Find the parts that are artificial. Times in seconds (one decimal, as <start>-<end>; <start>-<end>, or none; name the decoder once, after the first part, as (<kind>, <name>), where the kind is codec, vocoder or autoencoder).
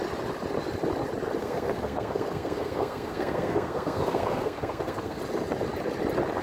1.4-5.2 (codec, SNAC)